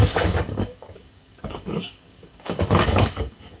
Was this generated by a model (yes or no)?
yes